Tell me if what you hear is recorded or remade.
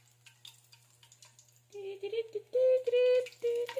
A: recorded